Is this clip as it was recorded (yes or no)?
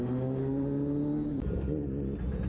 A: yes